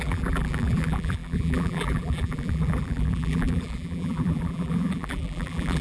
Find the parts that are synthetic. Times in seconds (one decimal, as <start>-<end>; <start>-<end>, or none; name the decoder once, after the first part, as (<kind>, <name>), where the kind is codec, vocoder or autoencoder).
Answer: 0.0-5.8 (vocoder, BigVGAN v2)